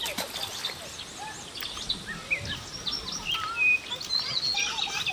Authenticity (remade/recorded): recorded